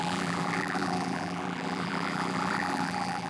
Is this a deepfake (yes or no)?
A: yes